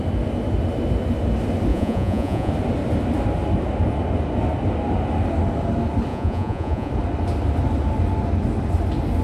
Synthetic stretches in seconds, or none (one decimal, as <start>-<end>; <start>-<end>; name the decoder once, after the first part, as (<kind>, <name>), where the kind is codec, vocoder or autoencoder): 1.7-2.5 (vocoder, Vocos); 6.1-6.9